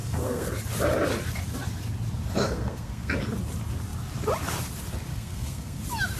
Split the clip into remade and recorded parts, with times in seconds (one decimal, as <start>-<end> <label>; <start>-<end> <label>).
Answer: 0.0-0.5 remade; 0.5-2.4 recorded; 2.4-3.1 remade; 3.1-5.1 recorded; 5.1-5.8 remade; 5.8-6.2 recorded